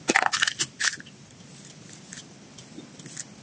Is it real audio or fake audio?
real